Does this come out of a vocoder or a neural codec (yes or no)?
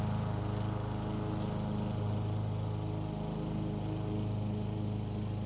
no